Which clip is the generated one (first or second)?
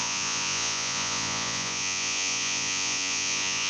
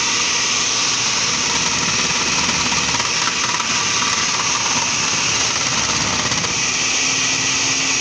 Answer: first